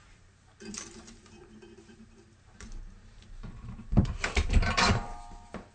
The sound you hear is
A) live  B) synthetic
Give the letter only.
B